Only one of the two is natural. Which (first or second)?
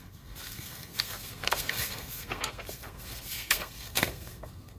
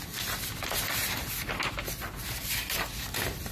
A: second